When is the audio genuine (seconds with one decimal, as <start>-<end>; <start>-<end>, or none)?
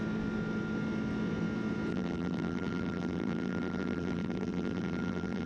0.0-1.9